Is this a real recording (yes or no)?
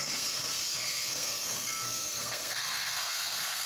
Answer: no